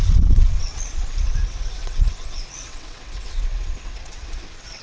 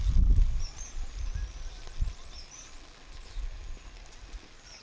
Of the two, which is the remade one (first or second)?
first